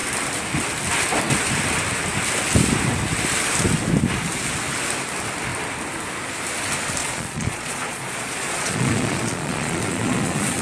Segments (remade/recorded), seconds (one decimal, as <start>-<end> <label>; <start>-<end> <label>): 0.0-7.0 recorded; 7.0-10.6 remade